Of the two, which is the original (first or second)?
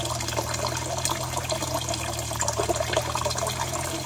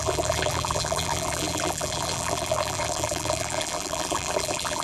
first